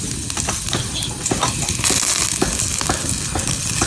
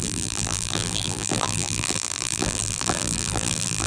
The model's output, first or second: second